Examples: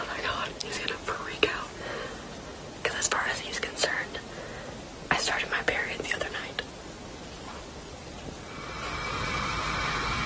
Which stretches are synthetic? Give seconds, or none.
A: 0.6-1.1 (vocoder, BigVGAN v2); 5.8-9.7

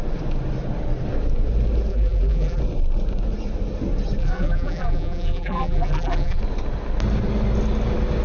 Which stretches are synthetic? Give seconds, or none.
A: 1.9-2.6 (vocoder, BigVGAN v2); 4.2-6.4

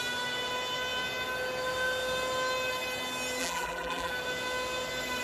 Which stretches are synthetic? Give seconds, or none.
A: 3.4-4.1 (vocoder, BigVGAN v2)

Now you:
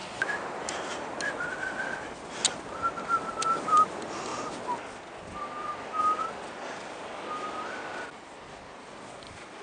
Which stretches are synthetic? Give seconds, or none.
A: none

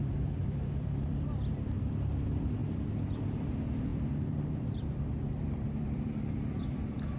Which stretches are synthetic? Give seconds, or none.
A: 0.0-7.2 (vocoder, BigVGAN v2)

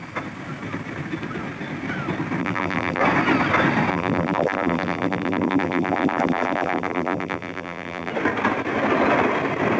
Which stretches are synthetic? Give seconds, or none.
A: 2.4-3.0 (vocoder, BigVGAN v2); 3.9-8.1